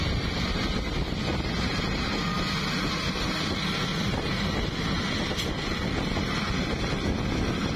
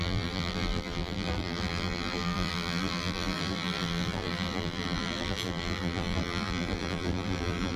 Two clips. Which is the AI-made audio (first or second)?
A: second